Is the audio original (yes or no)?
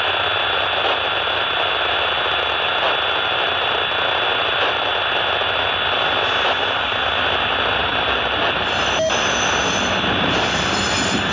yes